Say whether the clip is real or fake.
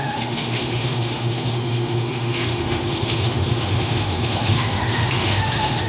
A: fake